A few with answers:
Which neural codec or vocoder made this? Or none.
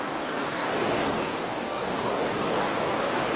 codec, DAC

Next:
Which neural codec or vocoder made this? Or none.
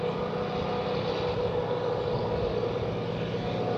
none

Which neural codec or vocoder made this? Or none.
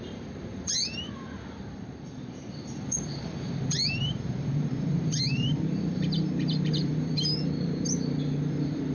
vocoder, BigVGAN v2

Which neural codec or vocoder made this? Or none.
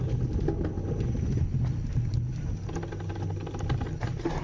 none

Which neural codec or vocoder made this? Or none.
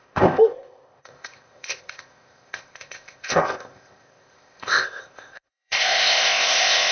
codec, ZipCodec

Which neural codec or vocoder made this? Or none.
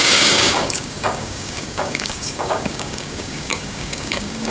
codec, DAC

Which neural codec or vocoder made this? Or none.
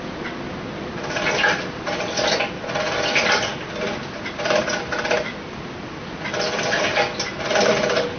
none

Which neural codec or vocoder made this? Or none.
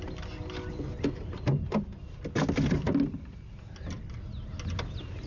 none